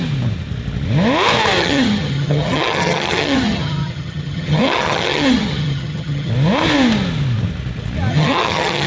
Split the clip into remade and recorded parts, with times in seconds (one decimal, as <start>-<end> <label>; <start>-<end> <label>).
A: 0.0-1.6 recorded; 1.6-6.3 remade; 6.3-8.1 recorded; 8.1-8.9 remade